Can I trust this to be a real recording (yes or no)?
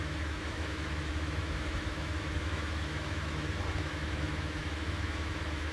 no